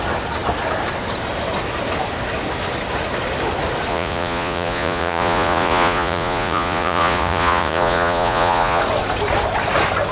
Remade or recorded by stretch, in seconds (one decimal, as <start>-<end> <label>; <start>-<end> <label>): 0.0-3.9 recorded; 3.9-8.8 remade; 8.8-10.1 recorded